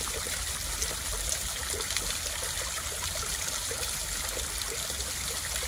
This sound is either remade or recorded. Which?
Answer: recorded